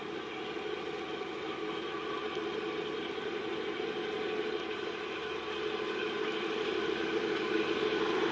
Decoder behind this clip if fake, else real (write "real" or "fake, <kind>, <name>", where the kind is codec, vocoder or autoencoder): real